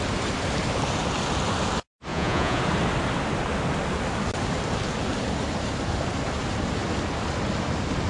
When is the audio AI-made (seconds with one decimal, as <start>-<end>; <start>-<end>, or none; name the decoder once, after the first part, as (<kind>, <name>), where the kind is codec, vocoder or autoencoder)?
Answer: 2.1-2.6 (vocoder, Vocos)